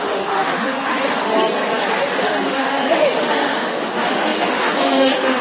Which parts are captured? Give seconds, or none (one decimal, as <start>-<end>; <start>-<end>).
1.3-1.9